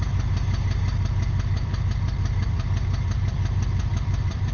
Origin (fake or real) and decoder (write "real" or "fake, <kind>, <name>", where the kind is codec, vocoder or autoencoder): fake, vocoder, BigVGAN v2